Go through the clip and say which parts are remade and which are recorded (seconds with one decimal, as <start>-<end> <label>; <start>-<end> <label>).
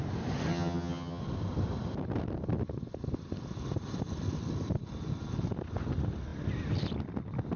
0.0-0.5 recorded; 0.5-1.2 remade; 1.2-7.6 recorded